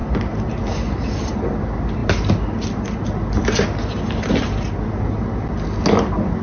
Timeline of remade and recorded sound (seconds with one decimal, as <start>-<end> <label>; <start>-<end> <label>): 0.0-6.4 recorded